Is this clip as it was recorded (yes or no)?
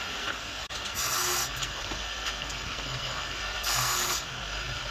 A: no